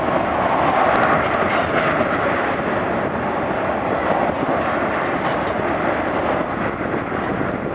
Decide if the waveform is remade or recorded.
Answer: recorded